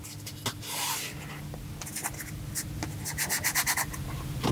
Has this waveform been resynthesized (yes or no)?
no